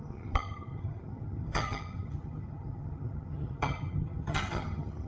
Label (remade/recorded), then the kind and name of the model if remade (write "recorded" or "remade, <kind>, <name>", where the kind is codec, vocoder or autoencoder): remade, vocoder, HiFi-GAN